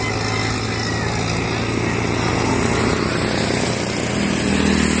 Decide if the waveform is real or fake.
real